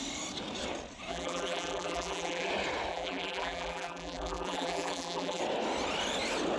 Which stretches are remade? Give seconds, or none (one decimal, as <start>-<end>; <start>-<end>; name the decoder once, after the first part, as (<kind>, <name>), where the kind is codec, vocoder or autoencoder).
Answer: 1.1-2.5 (vocoder, BigVGAN v2); 2.9-5.4